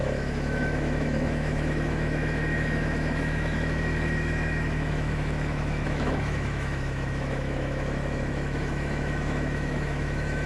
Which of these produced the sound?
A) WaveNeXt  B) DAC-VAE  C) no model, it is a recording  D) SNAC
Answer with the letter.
B